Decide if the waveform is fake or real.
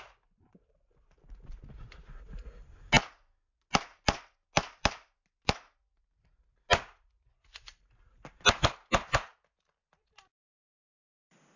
real